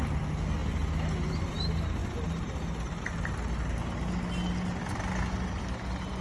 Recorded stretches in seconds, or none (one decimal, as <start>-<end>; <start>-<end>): 0.0-6.2